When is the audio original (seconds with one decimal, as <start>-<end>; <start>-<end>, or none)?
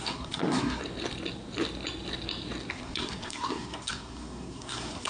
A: 0.8-2.7